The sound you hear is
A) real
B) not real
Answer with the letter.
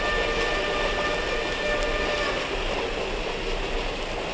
A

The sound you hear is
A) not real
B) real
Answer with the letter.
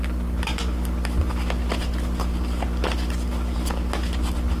B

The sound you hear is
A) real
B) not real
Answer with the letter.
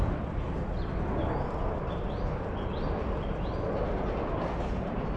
A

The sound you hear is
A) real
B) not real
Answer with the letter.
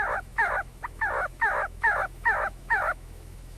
B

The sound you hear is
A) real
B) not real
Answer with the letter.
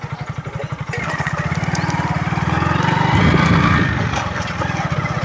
A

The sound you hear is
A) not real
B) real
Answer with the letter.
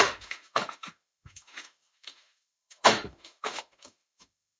A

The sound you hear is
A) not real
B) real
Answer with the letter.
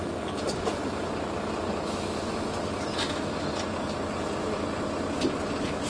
B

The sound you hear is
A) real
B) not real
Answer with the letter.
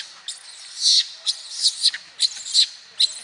A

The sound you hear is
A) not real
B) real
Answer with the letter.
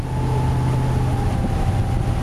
B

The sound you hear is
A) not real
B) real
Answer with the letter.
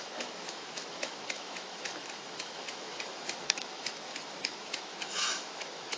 A